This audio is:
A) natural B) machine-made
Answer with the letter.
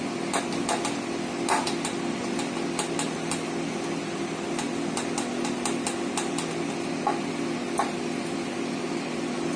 A